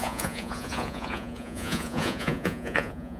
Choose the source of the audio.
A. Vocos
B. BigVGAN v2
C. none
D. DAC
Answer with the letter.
A